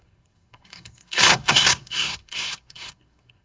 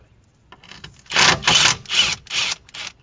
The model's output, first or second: first